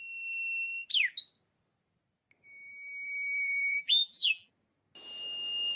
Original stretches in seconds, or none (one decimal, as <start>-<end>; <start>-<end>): 0.0-2.7; 4.5-5.8